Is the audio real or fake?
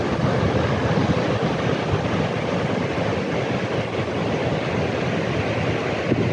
real